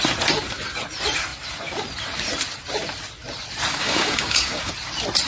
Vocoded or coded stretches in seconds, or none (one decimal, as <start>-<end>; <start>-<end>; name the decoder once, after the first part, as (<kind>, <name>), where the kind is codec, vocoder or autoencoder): 3.7-4.7 (codec, DAC)